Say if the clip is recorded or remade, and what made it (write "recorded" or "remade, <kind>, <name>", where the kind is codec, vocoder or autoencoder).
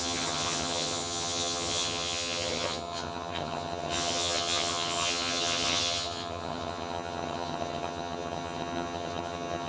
remade, vocoder, HiFi-GAN